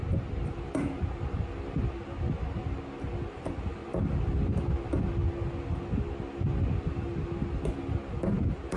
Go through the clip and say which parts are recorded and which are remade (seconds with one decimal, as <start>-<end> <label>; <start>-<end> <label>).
0.0-3.3 recorded; 3.3-3.8 remade; 3.8-8.1 recorded; 8.1-8.8 remade

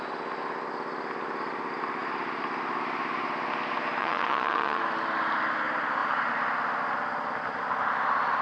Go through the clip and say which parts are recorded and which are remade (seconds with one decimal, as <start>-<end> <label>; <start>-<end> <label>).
0.0-4.0 recorded; 4.0-4.8 remade; 4.8-8.4 recorded